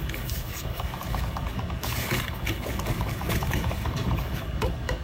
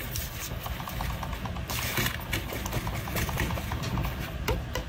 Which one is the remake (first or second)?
first